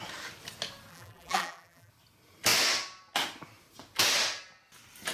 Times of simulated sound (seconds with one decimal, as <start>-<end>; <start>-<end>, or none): 0.9-1.9